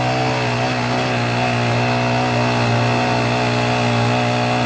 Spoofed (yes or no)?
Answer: no